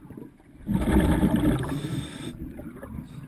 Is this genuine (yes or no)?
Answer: yes